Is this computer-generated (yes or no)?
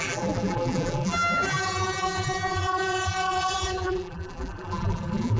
yes